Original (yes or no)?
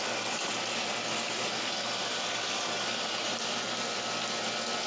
yes